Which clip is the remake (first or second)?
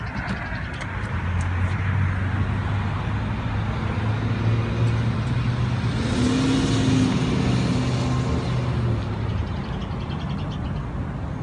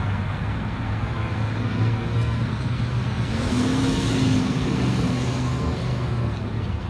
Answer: second